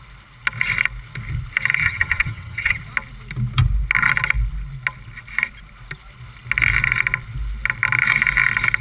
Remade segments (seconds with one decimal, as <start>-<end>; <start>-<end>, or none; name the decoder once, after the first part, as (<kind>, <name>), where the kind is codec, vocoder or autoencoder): 1.8-2.8 (vocoder, HiFi-GAN)